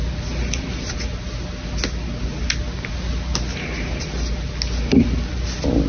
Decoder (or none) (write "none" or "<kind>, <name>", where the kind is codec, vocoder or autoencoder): none